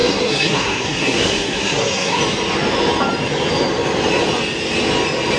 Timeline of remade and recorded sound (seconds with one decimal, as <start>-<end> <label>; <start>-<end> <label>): 0.0-2.2 remade; 2.2-5.4 recorded